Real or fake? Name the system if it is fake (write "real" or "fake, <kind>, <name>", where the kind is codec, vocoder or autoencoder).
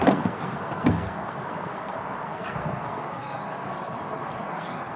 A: fake, codec, SNAC